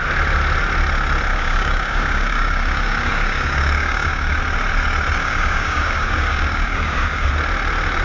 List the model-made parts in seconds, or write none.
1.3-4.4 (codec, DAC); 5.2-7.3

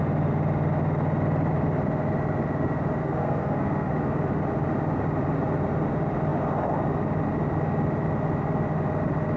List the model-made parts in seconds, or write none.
3.0-3.9 (codec, SNAC)

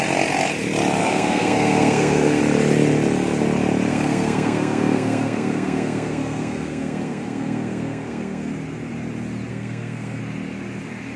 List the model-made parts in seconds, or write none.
1.0-2.4 (codec, SNAC); 3.9-8.5; 9.5-10.2